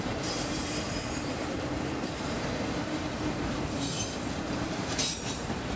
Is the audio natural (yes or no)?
no